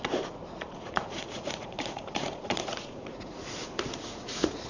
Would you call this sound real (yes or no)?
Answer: no